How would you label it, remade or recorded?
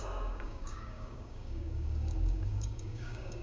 remade